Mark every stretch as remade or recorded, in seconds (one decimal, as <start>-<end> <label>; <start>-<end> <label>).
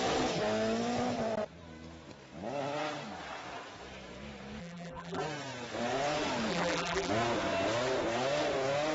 0.0-4.6 recorded; 4.6-5.2 remade; 5.2-6.5 recorded; 6.5-7.1 remade; 7.1-8.9 recorded